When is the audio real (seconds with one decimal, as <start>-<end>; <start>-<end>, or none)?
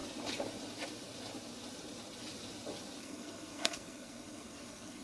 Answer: 0.0-3.0